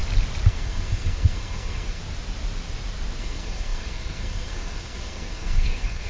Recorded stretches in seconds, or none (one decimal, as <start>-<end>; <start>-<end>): 0.0-0.5; 2.0-3.2